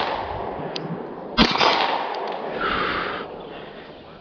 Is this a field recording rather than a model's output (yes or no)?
yes